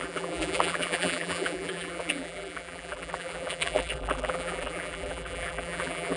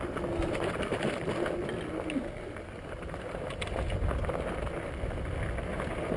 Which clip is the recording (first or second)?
second